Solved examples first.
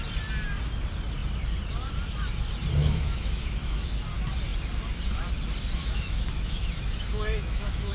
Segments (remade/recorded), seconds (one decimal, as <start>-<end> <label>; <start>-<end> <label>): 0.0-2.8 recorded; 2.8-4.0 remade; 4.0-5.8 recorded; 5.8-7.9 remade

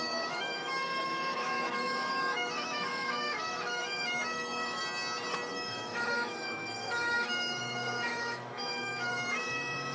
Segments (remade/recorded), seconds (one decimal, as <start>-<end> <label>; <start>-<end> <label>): 0.0-4.8 remade; 4.8-5.5 recorded; 5.5-9.9 remade

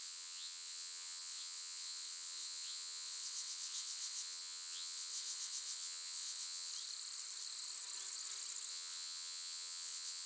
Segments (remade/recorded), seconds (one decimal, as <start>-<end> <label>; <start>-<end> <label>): 0.0-6.7 remade; 6.7-8.7 recorded; 8.7-10.3 remade